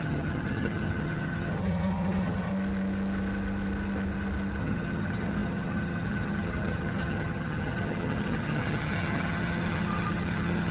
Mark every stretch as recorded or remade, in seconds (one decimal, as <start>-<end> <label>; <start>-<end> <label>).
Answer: 0.0-2.5 remade; 2.5-4.6 recorded; 4.6-10.7 remade